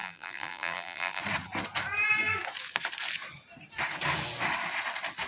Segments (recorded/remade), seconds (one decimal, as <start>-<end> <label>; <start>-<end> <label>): 0.0-1.2 remade; 1.2-5.3 recorded